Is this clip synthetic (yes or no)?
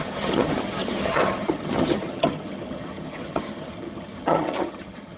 yes